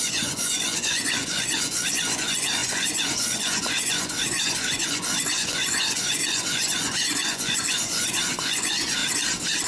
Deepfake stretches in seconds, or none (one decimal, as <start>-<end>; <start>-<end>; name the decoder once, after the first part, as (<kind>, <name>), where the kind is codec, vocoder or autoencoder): 0.0-9.0 (vocoder, Vocos)